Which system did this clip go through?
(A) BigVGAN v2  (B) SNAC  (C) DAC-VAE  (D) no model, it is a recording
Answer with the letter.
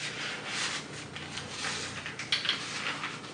D